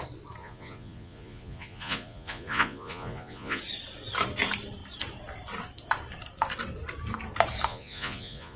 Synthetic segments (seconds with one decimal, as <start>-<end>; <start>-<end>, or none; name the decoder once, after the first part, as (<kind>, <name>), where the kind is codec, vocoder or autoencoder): 0.4-3.6 (vocoder, Vocos); 7.7-8.6